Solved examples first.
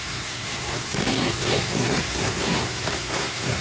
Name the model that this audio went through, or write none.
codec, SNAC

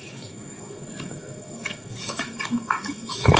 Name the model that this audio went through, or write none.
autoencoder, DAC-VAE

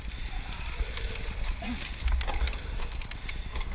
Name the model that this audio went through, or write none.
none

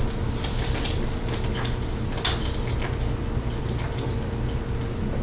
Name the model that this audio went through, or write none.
none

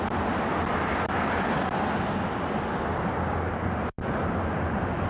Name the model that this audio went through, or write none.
none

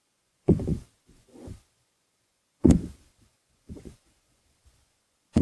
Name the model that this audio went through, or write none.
vocoder, Vocos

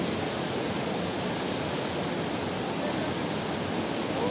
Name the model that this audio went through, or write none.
none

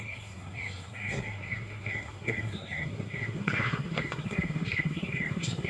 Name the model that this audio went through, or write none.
codec, SNAC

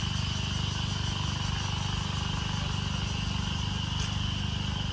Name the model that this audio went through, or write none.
none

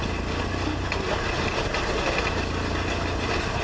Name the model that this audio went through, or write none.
none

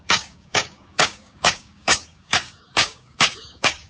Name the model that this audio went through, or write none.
codec, DAC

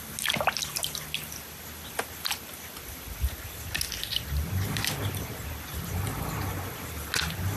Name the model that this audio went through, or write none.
none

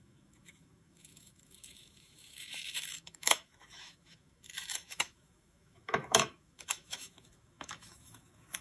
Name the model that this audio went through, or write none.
autoencoder, DAC-VAE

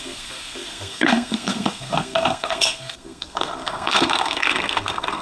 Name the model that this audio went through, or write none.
codec, SNAC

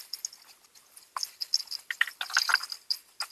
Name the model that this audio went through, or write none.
none